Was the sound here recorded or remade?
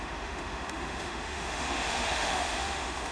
remade